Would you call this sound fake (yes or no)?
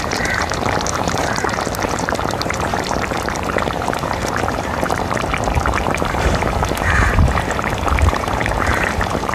yes